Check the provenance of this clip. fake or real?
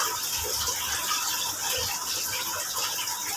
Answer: real